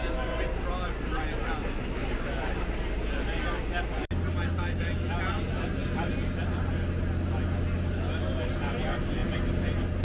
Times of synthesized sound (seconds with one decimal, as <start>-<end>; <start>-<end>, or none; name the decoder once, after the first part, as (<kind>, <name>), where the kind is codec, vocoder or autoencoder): none